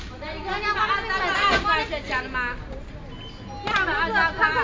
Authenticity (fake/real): real